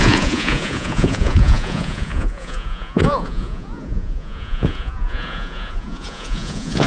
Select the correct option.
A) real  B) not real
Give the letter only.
B